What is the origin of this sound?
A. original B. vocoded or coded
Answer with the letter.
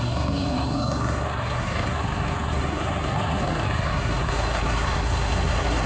B